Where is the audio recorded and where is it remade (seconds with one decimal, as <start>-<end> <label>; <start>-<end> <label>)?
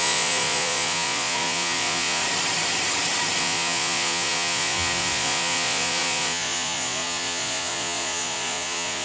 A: 0.0-2.2 remade; 2.2-3.4 recorded; 3.4-9.0 remade